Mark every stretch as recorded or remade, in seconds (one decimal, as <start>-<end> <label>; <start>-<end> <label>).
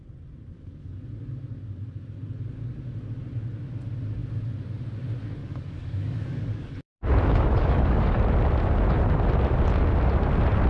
0.0-5.4 recorded; 5.4-8.2 remade; 8.2-10.7 recorded